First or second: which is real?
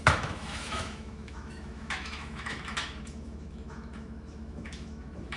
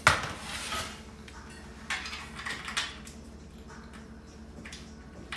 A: second